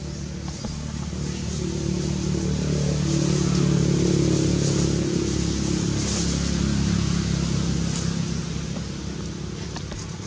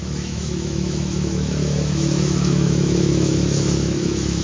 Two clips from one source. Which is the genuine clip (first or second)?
first